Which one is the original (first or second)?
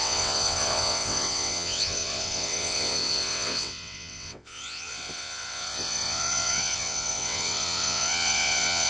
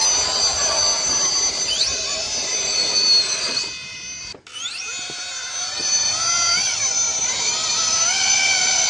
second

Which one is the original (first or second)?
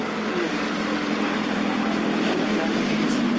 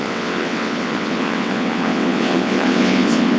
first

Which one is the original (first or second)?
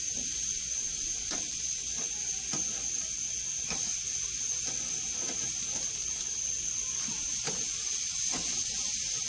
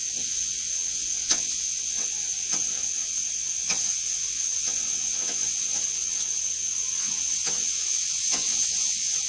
first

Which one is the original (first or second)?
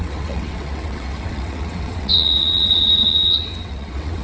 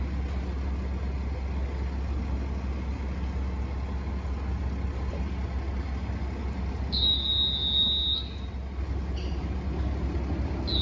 second